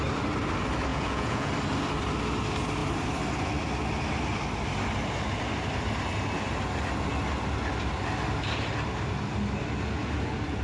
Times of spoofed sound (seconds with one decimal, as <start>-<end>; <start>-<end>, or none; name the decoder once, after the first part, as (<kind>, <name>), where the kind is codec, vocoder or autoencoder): 0.9-1.5 (vocoder, Vocos)